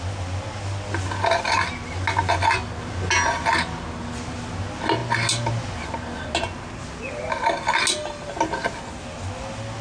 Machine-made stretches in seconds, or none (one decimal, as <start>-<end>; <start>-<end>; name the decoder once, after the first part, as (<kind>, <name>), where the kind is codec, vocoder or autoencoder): none